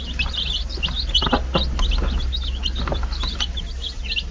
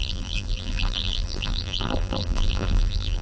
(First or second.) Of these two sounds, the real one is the first